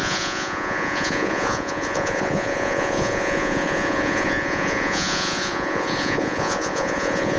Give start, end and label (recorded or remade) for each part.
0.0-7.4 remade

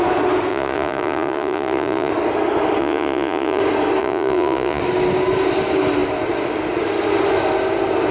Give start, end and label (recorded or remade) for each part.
0.0-0.5 recorded; 0.5-2.1 remade; 2.1-2.8 recorded; 2.8-3.6 remade; 3.6-4.0 recorded; 4.0-4.8 remade; 4.8-8.1 recorded

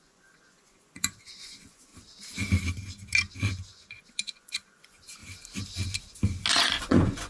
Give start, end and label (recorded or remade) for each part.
0.0-1.9 remade; 1.9-3.4 recorded; 3.4-5.2 remade; 5.2-6.5 recorded; 6.5-7.3 remade

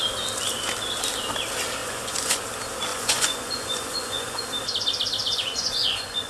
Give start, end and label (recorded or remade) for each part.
0.0-1.8 recorded; 1.8-2.4 remade; 2.4-2.9 recorded; 2.9-4.4 remade; 4.4-5.2 recorded; 5.2-6.3 remade

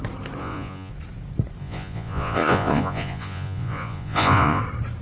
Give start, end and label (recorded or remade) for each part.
0.0-0.4 recorded; 0.4-0.9 remade; 0.9-1.6 recorded; 1.6-4.6 remade; 4.6-5.0 recorded